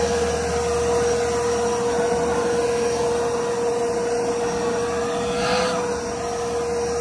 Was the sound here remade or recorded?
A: recorded